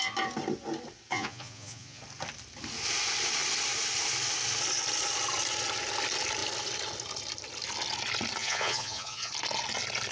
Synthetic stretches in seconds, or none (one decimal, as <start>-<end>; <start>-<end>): 1.1-2.0; 8.4-9.3